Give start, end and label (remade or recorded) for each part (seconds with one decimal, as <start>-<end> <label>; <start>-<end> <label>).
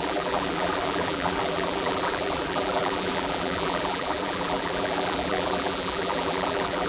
0.0-6.9 remade